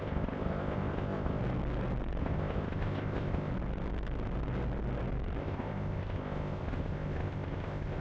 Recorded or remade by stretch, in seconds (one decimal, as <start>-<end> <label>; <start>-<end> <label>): 0.0-1.4 remade; 1.4-2.2 recorded; 2.2-3.5 remade; 3.5-5.4 recorded; 5.4-8.0 remade